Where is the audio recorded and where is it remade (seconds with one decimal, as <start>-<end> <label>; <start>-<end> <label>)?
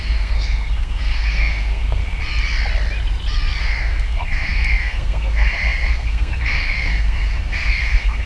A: 0.0-2.2 remade; 2.2-3.6 recorded; 3.6-8.3 remade